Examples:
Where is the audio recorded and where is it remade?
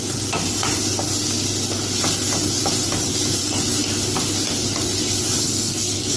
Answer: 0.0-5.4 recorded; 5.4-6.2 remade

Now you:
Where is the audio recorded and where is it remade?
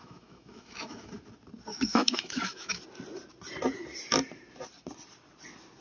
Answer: 0.0-1.1 remade; 1.1-1.7 recorded; 1.7-2.8 remade; 2.8-5.8 recorded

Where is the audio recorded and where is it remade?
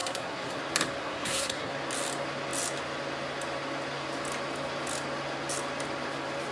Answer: 0.0-0.6 remade; 0.6-1.0 recorded; 1.0-1.7 remade; 1.7-6.5 recorded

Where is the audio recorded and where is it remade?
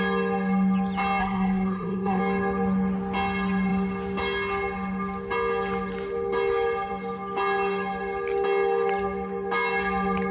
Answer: 0.0-1.2 recorded; 1.2-2.2 remade; 2.2-10.3 recorded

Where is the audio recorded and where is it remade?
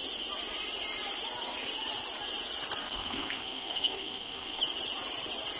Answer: 0.0-2.8 recorded; 2.8-4.6 remade; 4.6-5.6 recorded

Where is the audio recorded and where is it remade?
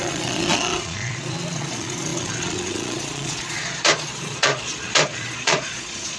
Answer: 0.0-6.2 remade